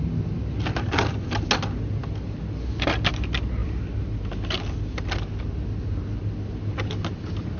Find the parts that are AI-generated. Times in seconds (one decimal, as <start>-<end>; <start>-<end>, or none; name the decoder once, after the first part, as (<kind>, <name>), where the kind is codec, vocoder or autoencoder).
none